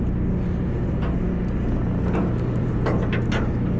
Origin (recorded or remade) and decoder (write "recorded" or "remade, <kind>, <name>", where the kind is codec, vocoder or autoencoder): recorded